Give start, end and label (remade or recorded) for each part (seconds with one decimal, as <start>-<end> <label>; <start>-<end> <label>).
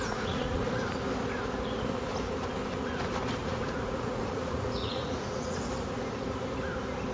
0.0-0.7 remade; 0.7-3.4 recorded; 3.4-5.6 remade; 5.6-7.1 recorded